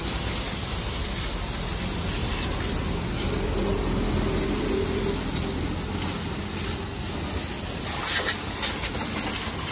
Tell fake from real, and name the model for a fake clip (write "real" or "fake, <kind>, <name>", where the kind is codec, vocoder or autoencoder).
real